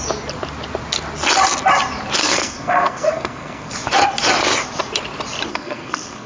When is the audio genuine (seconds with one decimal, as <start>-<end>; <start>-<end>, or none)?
0.0-2.2; 3.7-5.5